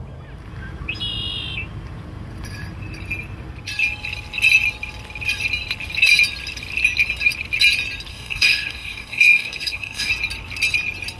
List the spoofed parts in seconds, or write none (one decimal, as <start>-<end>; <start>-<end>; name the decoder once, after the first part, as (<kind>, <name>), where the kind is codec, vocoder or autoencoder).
8.1-10.1 (codec, DAC)

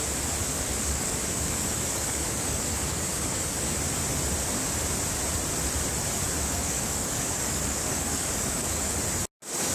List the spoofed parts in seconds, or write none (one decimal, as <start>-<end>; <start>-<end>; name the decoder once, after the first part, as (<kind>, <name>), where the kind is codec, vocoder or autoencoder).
0.4-3.7 (codec, DAC); 6.4-9.0

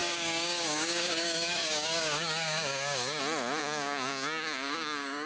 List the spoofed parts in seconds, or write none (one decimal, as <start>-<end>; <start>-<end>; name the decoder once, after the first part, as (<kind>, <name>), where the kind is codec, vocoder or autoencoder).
0.0-3.2 (codec, DAC); 3.6-5.3

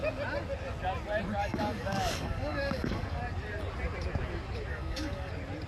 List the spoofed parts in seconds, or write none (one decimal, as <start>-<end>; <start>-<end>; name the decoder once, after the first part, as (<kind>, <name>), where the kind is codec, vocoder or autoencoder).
1.4-3.2 (codec, DAC); 4.7-5.3